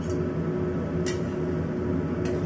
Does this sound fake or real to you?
real